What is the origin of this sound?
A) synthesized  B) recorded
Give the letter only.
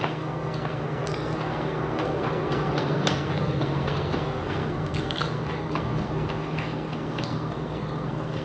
A